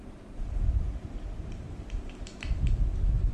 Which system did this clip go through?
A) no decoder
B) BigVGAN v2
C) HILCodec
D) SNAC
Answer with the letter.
A